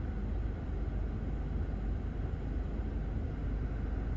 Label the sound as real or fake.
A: real